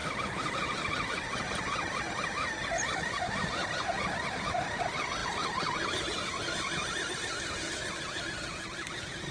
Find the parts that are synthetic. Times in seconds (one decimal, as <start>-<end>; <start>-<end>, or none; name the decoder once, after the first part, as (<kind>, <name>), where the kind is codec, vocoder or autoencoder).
0.0-0.6 (vocoder, BigVGAN v2)